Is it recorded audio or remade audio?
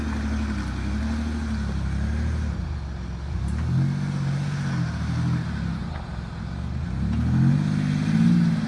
recorded